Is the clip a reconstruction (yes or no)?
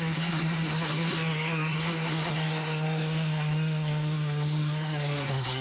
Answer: yes